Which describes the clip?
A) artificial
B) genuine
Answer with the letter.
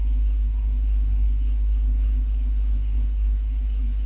A